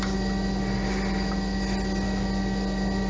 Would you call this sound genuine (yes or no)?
yes